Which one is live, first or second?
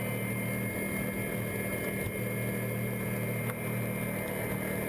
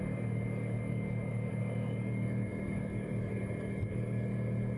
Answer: first